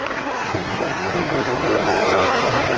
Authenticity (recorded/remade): remade